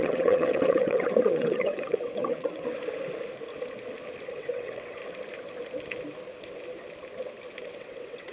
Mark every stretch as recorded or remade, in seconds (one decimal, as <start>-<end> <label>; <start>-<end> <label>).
0.0-2.8 remade; 2.8-4.3 recorded; 4.3-5.0 remade; 5.0-7.6 recorded; 7.6-8.3 remade